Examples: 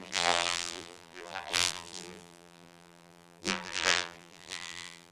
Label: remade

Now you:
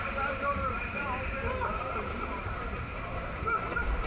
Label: remade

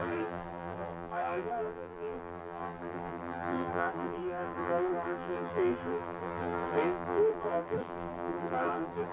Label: remade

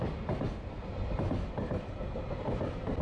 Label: recorded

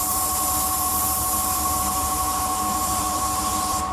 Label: remade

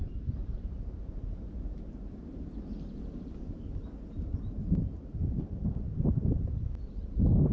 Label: remade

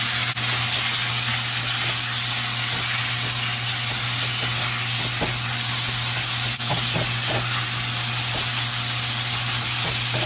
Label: recorded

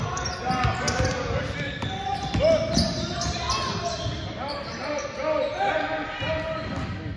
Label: recorded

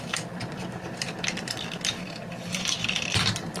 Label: remade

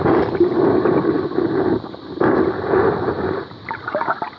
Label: recorded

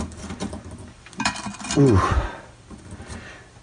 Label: remade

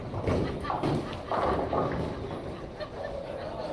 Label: recorded